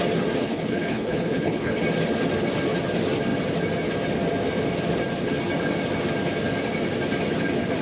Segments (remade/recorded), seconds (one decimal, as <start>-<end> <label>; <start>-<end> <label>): 0.0-0.4 recorded; 0.4-1.8 remade; 1.8-7.8 recorded